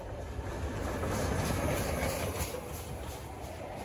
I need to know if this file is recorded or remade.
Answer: recorded